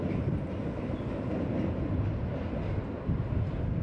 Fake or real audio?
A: real